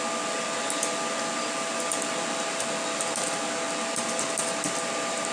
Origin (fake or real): real